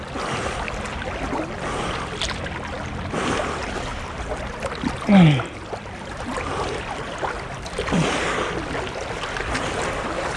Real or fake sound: real